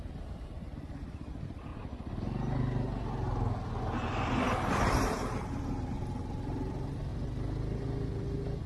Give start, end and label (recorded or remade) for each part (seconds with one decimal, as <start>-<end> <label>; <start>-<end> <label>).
0.0-1.7 remade; 1.7-3.8 recorded; 3.8-7.1 remade; 7.1-8.7 recorded